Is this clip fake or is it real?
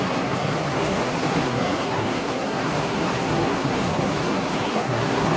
fake